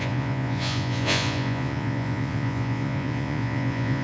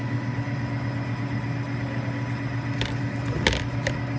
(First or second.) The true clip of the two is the second